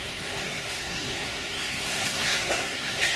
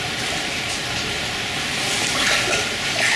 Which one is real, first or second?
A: second